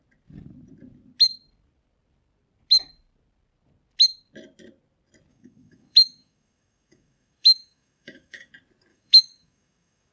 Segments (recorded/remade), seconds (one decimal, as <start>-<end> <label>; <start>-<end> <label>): 0.0-5.3 recorded; 5.3-8.5 remade; 8.5-8.9 recorded; 8.9-10.1 remade